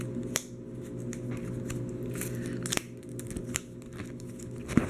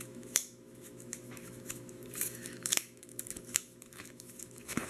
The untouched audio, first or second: first